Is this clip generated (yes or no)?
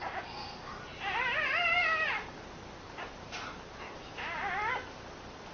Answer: no